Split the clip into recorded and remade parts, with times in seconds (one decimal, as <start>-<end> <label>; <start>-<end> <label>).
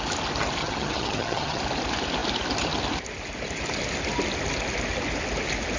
0.0-0.6 recorded; 0.6-1.6 remade; 1.6-5.8 recorded